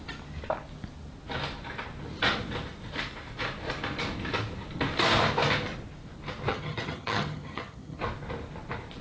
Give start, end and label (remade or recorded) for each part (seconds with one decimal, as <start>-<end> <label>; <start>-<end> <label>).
0.0-6.5 recorded; 6.5-8.0 remade; 8.0-9.0 recorded